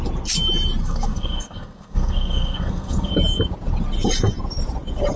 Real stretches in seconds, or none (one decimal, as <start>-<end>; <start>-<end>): 0.0-0.8; 3.1-5.2